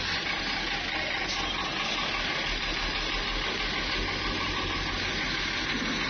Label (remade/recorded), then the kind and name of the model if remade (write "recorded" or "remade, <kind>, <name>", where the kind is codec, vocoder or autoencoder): recorded